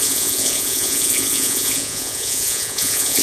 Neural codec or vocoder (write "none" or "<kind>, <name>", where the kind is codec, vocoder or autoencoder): vocoder, Vocos